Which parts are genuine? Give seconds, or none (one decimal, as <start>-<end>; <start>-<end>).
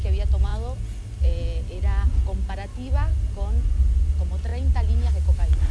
0.0-5.7